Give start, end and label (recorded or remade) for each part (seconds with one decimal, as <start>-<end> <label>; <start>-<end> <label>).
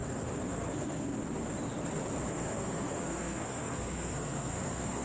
0.0-1.1 remade; 1.1-2.3 recorded; 2.3-5.0 remade